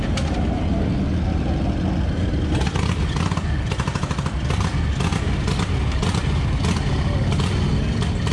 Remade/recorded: recorded